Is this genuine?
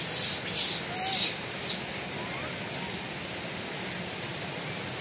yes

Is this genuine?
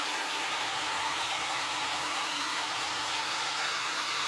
no